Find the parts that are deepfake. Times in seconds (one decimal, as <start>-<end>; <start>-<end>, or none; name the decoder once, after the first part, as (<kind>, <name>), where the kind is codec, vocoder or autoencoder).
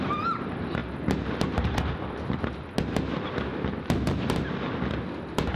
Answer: none